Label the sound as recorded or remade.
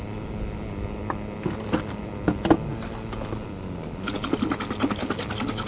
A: recorded